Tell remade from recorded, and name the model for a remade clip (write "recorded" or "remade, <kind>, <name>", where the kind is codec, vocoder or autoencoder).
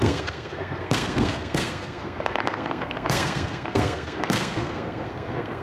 remade, codec, SNAC